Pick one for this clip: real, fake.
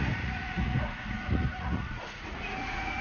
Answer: fake